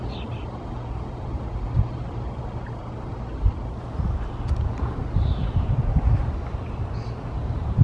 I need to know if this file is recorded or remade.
recorded